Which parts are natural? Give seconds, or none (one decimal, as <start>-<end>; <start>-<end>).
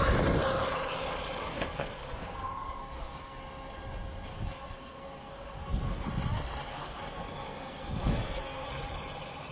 0.0-1.4; 3.4-4.3; 6.1-6.7; 8.7-9.5